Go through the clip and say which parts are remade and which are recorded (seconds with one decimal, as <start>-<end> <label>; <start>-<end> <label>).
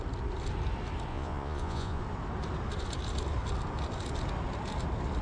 0.0-1.1 recorded; 1.1-2.0 remade; 2.0-5.2 recorded